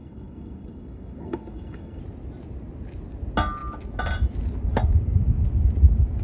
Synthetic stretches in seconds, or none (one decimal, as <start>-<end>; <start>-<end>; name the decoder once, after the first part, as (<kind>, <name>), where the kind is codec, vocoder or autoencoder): 0.0-2.0 (codec, SNAC)